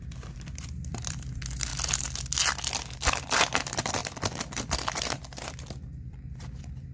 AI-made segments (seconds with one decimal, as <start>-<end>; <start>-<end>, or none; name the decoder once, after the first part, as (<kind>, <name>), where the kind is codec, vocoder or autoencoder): 0.0-1.7 (vocoder, BigVGAN v2); 3.1-4.0; 4.6-6.9